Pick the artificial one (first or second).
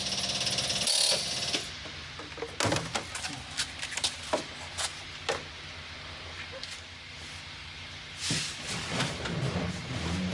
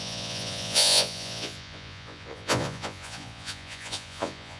second